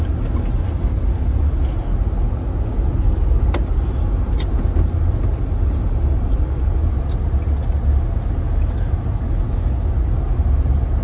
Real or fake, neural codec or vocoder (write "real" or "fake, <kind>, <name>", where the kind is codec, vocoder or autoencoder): real